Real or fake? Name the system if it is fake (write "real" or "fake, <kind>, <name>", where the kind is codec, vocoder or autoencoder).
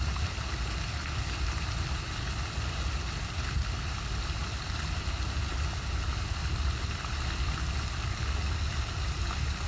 real